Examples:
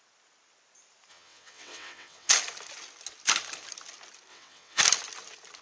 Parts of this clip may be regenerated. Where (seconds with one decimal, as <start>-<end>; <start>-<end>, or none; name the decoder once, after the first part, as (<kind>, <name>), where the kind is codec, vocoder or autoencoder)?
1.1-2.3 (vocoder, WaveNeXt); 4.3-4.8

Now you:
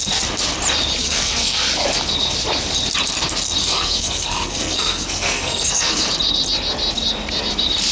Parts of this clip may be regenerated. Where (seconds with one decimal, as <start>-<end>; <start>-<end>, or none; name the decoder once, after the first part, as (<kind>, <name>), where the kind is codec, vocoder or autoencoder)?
1.0-1.6 (codec, SNAC); 3.6-6.1

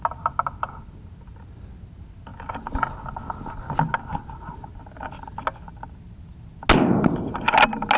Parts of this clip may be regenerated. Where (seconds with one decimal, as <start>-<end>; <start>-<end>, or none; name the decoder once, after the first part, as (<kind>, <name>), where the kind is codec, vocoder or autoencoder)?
none

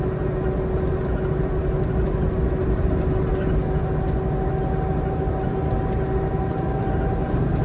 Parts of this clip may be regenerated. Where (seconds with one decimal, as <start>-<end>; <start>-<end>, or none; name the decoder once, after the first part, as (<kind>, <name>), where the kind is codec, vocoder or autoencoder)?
none

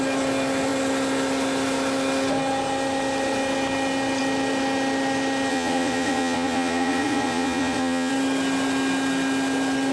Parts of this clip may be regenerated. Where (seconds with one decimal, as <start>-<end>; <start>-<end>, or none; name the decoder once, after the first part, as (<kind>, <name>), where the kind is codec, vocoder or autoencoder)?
5.5-8.1 (vocoder, Vocos)

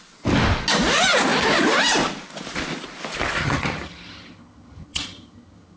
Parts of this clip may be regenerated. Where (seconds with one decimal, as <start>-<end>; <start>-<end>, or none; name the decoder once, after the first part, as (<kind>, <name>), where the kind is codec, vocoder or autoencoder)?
3.4-5.8 (vocoder, HiFi-GAN)

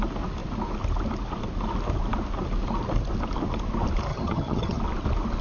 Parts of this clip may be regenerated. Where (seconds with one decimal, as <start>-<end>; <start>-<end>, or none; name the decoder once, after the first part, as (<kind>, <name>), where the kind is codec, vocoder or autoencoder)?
4.1-4.8 (vocoder, HiFi-GAN)

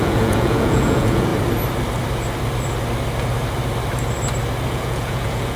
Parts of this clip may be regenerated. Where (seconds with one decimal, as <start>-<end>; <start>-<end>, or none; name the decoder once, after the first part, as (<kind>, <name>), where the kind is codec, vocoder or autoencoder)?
0.0-1.3 (vocoder, Vocos); 4.7-5.6